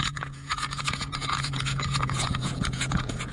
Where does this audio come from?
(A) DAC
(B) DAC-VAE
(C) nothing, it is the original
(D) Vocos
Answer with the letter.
D